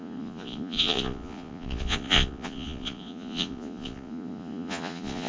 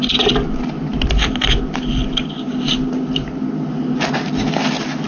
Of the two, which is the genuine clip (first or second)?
second